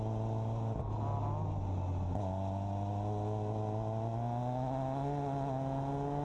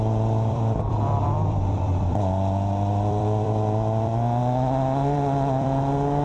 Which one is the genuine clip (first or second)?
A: first